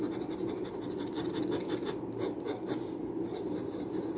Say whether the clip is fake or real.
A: real